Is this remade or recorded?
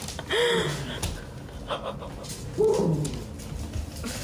recorded